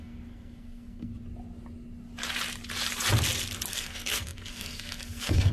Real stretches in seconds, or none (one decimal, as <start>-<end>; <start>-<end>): 1.1-3.7